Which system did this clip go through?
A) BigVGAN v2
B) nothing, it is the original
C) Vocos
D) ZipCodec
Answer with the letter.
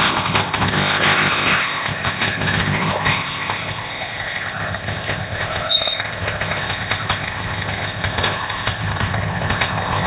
D